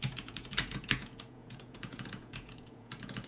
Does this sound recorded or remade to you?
remade